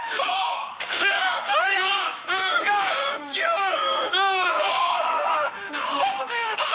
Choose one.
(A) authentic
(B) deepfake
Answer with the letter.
B